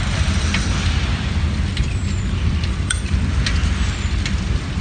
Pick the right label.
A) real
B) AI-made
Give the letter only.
B